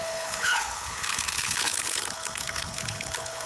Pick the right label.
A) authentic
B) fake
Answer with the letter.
B